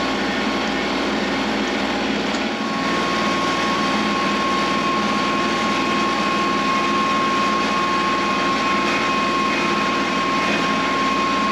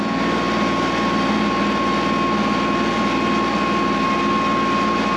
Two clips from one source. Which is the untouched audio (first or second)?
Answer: second